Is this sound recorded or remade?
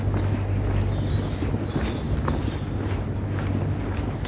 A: recorded